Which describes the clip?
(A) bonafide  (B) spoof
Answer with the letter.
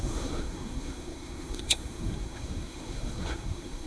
B